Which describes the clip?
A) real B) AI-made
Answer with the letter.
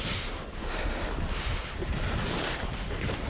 A